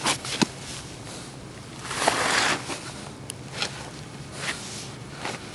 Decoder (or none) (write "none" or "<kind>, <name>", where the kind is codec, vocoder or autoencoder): none